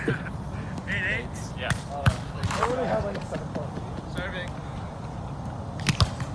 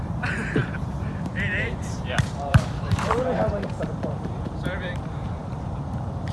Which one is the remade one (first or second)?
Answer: second